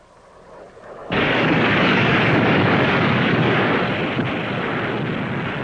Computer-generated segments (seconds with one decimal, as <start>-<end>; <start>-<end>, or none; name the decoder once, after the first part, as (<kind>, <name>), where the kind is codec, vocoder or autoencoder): 1.0-3.7 (codec, DAC)